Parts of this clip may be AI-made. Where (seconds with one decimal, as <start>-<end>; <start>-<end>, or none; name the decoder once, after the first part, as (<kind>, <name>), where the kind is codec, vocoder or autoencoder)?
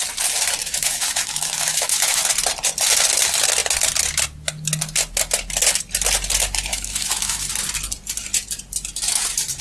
0.6-2.2 (autoencoder, DAC-VAE); 6.7-7.5